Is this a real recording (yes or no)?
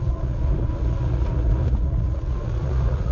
no